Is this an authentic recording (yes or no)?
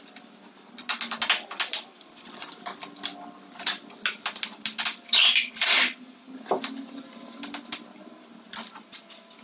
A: yes